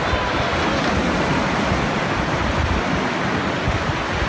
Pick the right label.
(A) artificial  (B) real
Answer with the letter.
B